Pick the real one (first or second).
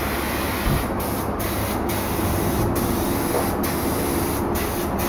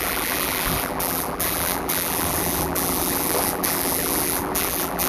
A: first